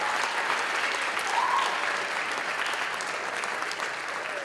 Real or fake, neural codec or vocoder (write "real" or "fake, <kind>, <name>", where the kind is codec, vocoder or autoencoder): real